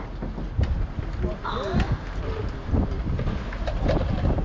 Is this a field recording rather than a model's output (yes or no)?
yes